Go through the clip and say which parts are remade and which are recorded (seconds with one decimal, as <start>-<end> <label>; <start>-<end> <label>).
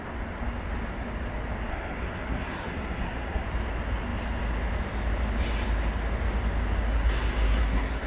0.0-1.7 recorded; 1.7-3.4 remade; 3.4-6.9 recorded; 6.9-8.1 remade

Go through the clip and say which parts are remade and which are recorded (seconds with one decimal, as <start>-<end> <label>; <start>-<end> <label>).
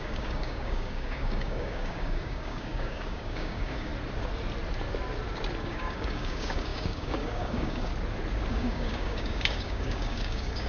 0.0-3.9 remade; 3.9-5.6 recorded; 5.6-7.9 remade; 7.9-8.5 recorded; 8.5-10.7 remade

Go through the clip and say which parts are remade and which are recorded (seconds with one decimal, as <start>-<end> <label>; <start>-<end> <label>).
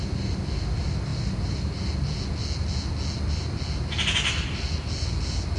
0.0-5.6 recorded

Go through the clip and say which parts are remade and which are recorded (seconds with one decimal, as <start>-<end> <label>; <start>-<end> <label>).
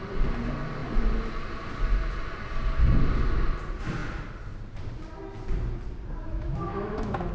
0.0-6.3 recorded; 6.3-7.3 remade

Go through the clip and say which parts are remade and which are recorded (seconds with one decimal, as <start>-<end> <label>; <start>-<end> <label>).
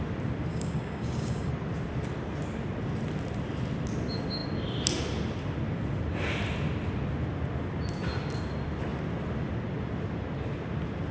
0.0-0.5 recorded; 0.5-1.5 remade; 1.5-11.1 recorded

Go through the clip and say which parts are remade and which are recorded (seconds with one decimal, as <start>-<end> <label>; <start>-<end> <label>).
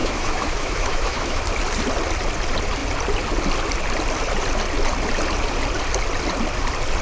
0.0-1.4 remade; 1.4-7.0 recorded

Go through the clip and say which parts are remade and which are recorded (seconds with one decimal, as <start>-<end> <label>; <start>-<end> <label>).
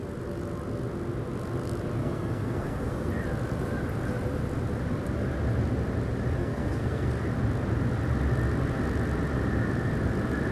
0.0-2.0 recorded; 2.0-3.1 remade; 3.1-6.4 recorded; 6.4-7.1 remade; 7.1-10.5 recorded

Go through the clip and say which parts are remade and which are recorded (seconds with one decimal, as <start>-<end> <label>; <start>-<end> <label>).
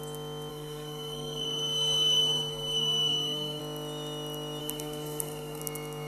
0.0-0.5 recorded; 0.5-3.6 remade; 3.6-4.6 recorded; 4.6-5.6 remade; 5.6-6.1 recorded